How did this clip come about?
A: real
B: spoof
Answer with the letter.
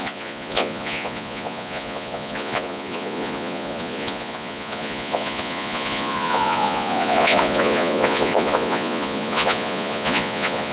B